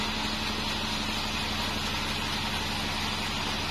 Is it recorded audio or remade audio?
recorded